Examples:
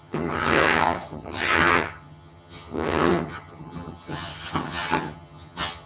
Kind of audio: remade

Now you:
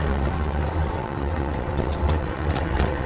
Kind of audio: remade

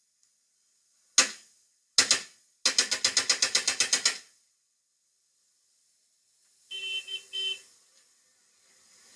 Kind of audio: recorded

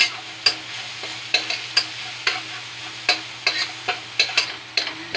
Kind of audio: recorded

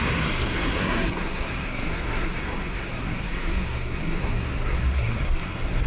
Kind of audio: remade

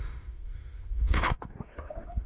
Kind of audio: remade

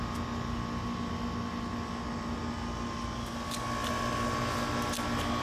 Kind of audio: recorded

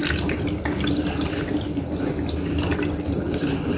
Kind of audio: recorded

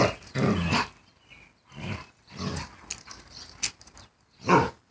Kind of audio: recorded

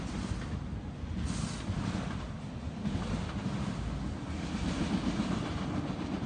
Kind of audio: recorded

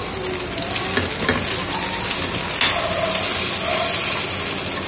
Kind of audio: recorded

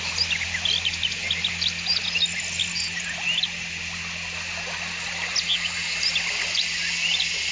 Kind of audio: recorded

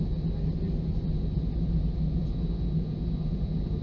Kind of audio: recorded